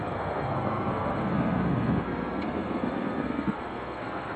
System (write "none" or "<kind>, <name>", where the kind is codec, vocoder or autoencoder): codec, SNAC